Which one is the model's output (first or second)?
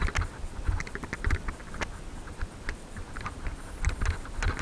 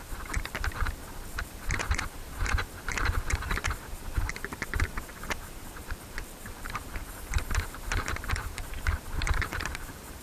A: second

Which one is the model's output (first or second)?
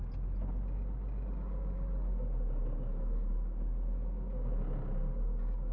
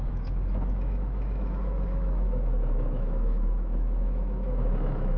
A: second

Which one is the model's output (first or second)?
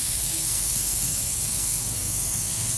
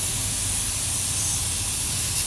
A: first